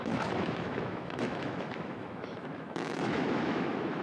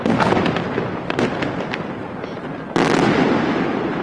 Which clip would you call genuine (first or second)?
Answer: second